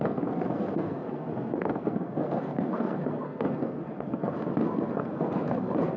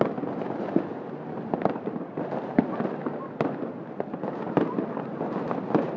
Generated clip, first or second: first